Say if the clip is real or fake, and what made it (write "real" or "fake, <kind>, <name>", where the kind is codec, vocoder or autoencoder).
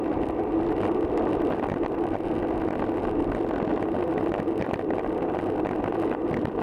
real